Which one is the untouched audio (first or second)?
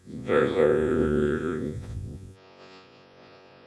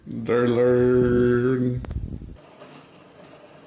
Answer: second